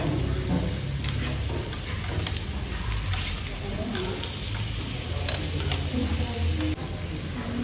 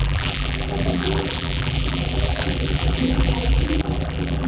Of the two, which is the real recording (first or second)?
first